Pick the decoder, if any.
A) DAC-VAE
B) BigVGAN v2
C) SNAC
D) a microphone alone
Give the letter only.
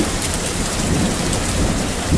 B